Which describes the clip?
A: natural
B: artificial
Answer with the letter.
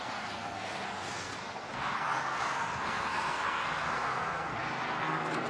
B